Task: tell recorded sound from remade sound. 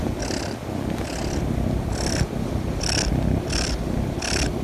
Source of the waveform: recorded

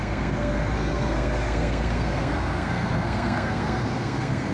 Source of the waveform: remade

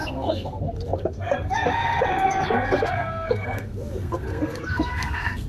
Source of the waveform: remade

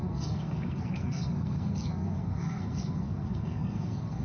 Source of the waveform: remade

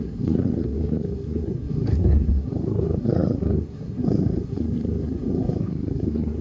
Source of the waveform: remade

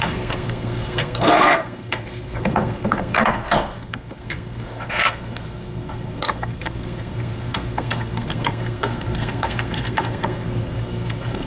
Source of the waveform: remade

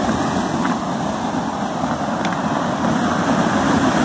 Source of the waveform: recorded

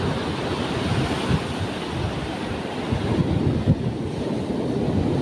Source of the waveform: recorded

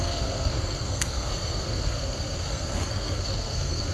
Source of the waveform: remade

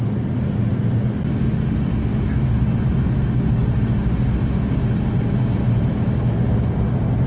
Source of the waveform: recorded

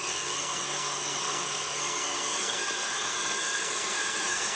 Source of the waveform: remade